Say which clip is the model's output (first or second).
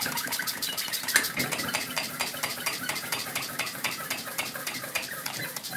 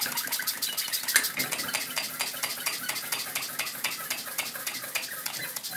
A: first